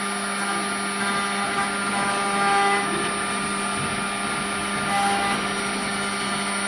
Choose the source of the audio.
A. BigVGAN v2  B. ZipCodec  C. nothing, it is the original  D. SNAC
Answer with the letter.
C